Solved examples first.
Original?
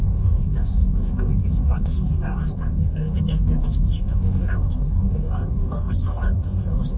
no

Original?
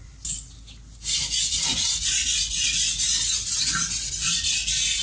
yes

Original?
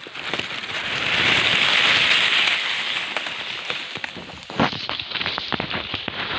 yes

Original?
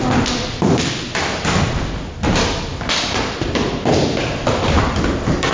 yes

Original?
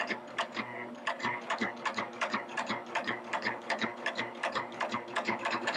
no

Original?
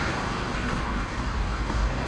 no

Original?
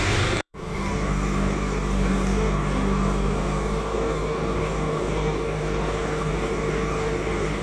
no